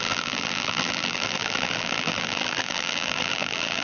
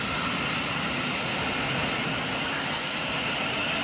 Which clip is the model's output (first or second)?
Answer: first